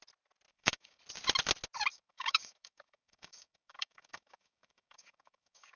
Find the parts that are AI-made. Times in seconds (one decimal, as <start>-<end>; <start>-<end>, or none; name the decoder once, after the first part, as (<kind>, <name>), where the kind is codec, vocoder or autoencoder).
0.5-1.0 (codec, DAC); 1.9-5.8